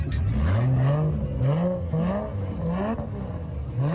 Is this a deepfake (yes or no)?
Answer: no